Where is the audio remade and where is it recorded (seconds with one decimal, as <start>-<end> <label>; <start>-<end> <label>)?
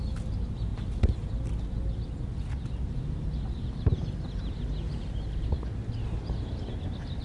0.0-7.2 recorded